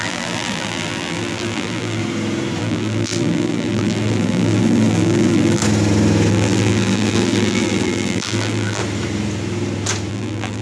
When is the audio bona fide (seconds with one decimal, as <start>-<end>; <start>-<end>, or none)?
2.0-2.6; 5.6-6.3; 8.8-10.1